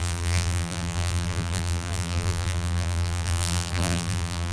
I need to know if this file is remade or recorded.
remade